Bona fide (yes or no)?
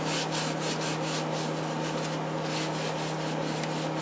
yes